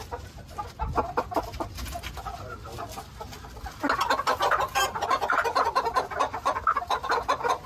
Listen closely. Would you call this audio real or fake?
real